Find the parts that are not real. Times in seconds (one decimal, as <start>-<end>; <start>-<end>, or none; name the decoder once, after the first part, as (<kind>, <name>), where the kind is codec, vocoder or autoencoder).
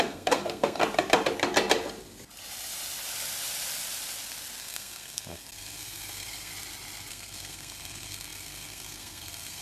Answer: 0.0-0.8 (codec, SNAC); 4.6-6.5; 7.1-9.6